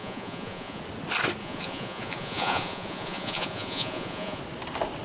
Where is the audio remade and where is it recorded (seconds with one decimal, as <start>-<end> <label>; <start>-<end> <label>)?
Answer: 0.0-0.8 remade; 0.8-1.4 recorded; 1.4-4.4 remade; 4.4-5.0 recorded